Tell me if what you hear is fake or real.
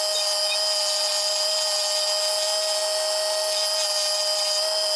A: real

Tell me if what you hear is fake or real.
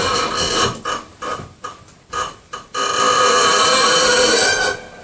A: real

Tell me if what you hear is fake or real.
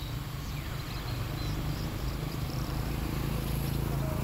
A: real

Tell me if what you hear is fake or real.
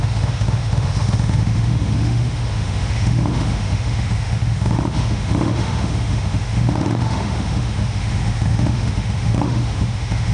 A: fake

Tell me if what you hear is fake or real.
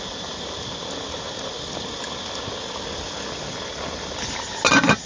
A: real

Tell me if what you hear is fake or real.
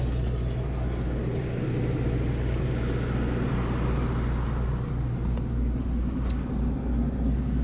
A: real